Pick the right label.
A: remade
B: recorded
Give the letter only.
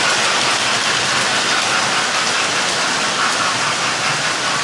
B